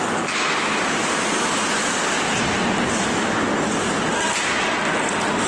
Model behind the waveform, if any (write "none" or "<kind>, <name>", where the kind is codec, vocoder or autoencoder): none